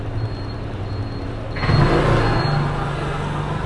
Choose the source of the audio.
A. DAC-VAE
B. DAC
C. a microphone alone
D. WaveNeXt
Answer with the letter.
C